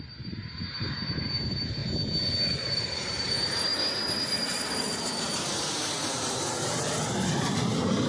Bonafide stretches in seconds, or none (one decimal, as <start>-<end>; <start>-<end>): 1.8-2.5; 3.7-4.3